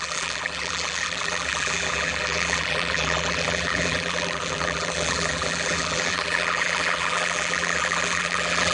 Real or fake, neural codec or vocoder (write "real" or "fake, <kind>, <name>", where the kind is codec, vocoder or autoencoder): fake, vocoder, BigVGAN v2